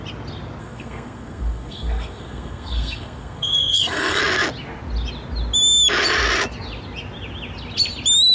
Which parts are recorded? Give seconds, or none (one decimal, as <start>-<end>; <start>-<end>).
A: 0.0-0.6; 4.2-8.3